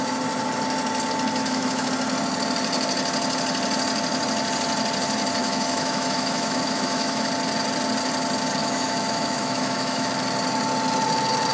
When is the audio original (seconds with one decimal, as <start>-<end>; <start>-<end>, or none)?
0.0-1.4; 1.9-5.4; 7.3-8.6; 10.1-11.5